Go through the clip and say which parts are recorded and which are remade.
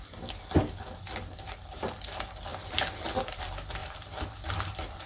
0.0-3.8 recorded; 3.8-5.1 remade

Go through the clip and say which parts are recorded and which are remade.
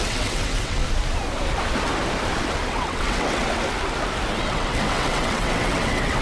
0.0-0.8 remade; 0.8-2.7 recorded; 2.7-3.5 remade; 3.5-4.4 recorded; 4.4-6.2 remade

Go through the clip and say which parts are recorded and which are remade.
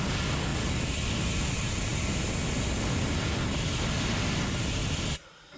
0.0-5.6 recorded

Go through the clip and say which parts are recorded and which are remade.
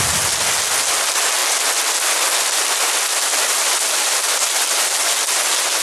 0.0-5.8 recorded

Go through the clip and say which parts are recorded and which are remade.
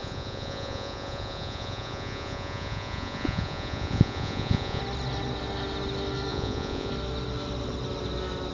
0.0-4.8 remade; 4.8-6.3 recorded; 6.3-6.9 remade; 6.9-8.5 recorded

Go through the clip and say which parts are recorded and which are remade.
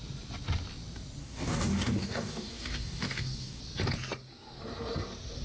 0.0-1.2 recorded; 1.2-3.6 remade; 3.6-5.4 recorded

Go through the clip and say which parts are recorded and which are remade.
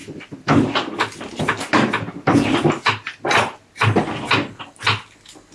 0.0-5.5 recorded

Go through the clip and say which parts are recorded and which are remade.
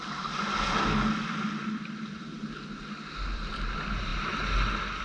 0.0-5.0 recorded